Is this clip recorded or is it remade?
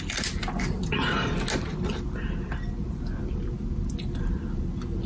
recorded